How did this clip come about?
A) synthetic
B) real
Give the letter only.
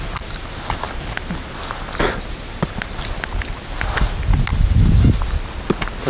B